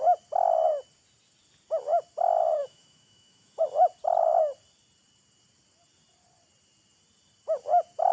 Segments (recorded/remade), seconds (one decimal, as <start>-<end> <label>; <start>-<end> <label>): 0.0-2.6 recorded; 2.6-3.6 remade; 3.6-8.1 recorded